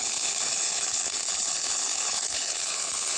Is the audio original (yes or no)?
no